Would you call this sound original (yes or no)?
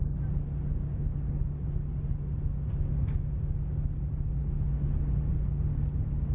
yes